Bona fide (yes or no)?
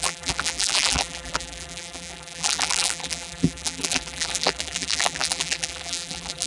no